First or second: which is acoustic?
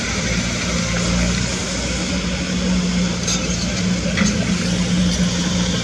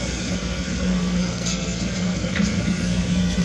first